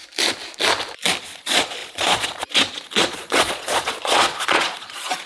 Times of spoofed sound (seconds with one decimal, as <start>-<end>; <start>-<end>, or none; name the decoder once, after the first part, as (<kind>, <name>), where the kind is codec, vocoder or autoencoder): 1.2-5.3 (vocoder, Vocos)